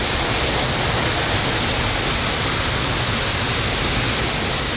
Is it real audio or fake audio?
real